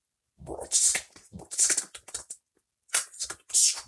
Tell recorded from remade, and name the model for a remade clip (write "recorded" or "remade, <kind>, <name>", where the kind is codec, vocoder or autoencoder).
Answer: recorded